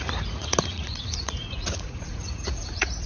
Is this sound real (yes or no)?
no